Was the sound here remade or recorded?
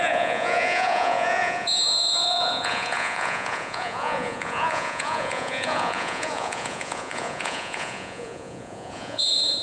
remade